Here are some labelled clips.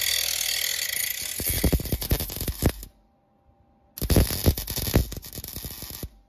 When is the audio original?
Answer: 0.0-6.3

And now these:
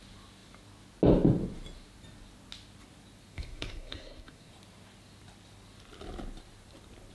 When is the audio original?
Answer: 0.0-3.3; 4.5-7.1

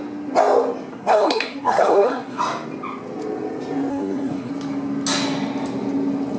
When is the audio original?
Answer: 0.0-0.9; 2.4-3.9; 4.5-6.4

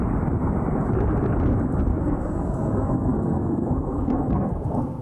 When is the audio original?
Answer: 0.0-1.9